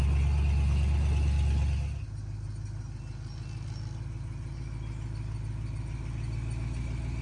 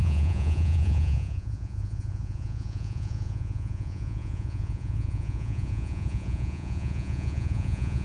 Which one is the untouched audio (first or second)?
first